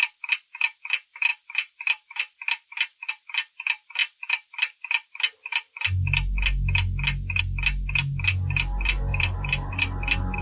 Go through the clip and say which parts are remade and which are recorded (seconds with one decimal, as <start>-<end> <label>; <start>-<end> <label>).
0.0-1.3 recorded; 1.3-3.1 remade; 3.1-9.1 recorded; 9.1-9.7 remade; 9.7-10.4 recorded

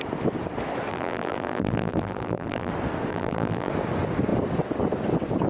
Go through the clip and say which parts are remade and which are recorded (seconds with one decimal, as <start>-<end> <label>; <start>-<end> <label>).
0.0-0.9 recorded; 0.9-2.7 remade; 2.7-3.1 recorded; 3.1-3.7 remade; 3.7-5.5 recorded